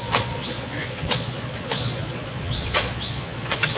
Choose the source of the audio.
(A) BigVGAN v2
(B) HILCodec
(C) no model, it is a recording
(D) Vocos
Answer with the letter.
D